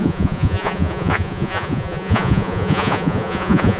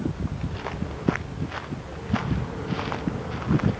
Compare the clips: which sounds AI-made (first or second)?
first